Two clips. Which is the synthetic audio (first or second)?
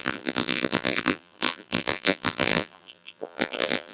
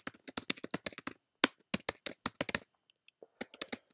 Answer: first